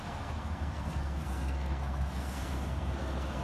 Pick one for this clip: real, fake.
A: fake